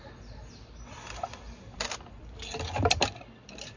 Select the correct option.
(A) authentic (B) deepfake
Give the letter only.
B